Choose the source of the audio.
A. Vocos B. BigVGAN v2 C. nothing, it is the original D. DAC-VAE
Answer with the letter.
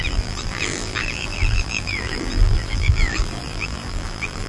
B